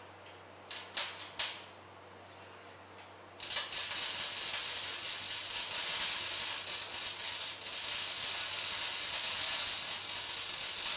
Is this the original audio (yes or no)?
yes